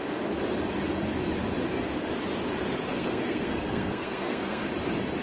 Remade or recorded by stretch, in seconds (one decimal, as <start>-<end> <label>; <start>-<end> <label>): 0.0-2.9 recorded; 2.9-4.6 remade; 4.6-5.2 recorded